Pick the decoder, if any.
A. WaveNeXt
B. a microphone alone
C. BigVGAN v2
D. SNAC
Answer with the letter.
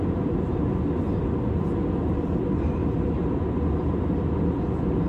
B